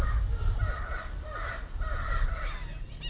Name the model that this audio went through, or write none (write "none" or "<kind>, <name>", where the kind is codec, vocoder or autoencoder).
none